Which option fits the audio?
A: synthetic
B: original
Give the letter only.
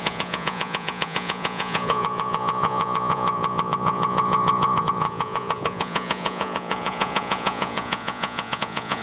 A